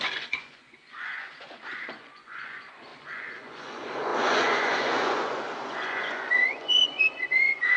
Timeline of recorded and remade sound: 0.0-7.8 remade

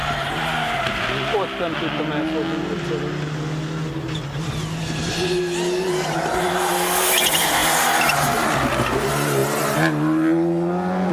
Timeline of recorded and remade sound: 0.0-11.1 recorded

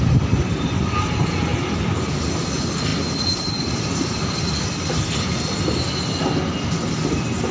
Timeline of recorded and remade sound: 0.0-1.5 recorded; 1.5-2.4 remade; 2.4-2.9 recorded; 2.9-7.5 remade

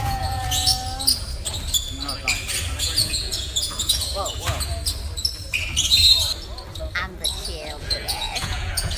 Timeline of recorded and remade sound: 0.0-0.7 remade; 0.7-2.8 recorded; 2.8-4.7 remade; 4.7-7.8 recorded; 7.8-9.0 remade

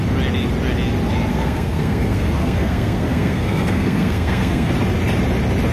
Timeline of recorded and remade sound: 0.0-1.3 recorded; 1.3-4.7 remade; 4.7-5.7 recorded

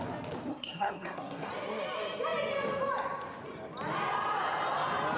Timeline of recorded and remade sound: 0.0-0.5 recorded; 0.5-1.5 remade; 1.5-5.2 recorded